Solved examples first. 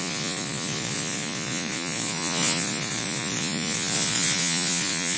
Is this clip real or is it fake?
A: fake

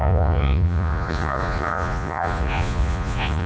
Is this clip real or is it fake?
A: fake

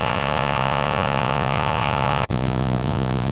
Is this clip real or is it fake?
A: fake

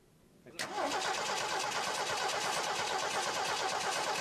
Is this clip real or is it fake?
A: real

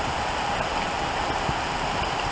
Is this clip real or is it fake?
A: real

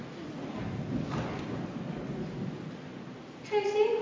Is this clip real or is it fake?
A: real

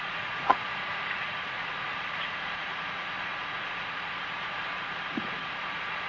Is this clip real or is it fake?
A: fake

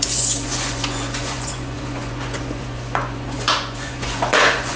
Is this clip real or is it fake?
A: fake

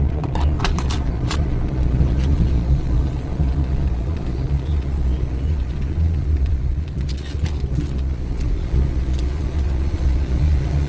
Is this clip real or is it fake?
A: fake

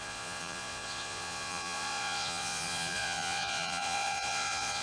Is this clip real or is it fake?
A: fake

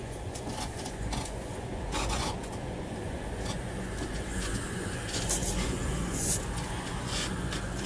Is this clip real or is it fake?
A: fake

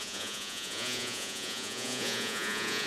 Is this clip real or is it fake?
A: fake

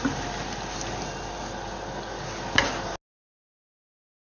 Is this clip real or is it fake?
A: real